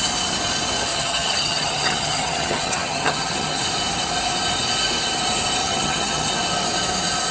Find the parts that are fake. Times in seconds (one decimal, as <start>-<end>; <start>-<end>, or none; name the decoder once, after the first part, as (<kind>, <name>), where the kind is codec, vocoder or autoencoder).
0.9-3.6 (vocoder, HiFi-GAN); 5.6-6.3